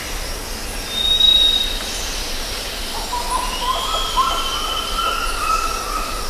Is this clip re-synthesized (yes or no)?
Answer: no